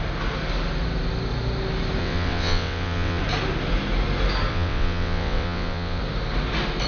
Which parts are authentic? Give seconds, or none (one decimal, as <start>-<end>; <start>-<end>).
0.0-2.0; 3.2-4.5; 6.0-6.9